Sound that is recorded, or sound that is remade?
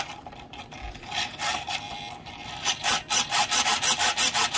remade